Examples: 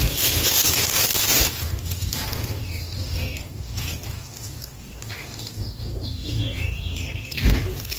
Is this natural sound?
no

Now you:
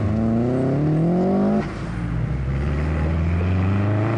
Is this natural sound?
yes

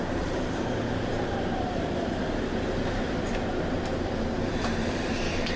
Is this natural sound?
no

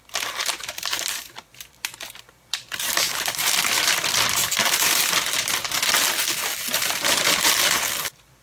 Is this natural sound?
no